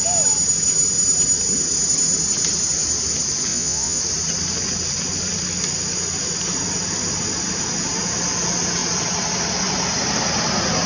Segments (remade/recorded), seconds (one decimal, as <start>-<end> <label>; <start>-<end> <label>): 0.0-3.5 recorded; 3.5-4.0 remade; 4.0-10.9 recorded